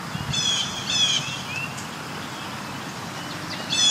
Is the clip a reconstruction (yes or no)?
no